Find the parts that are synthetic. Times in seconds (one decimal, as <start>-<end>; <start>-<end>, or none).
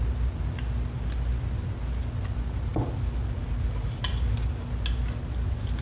none